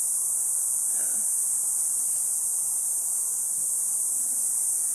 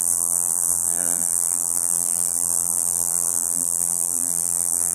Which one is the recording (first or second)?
first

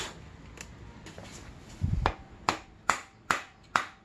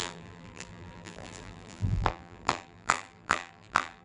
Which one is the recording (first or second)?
first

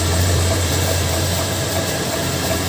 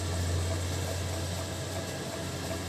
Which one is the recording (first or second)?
second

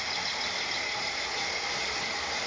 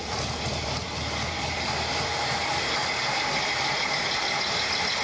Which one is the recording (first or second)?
second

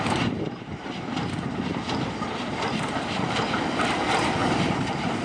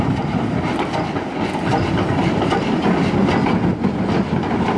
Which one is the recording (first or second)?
second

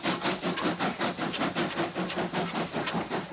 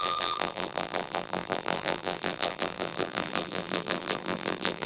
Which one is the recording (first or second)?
first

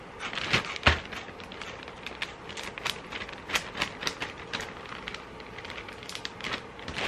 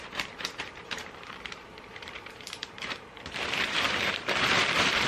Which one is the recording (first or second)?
first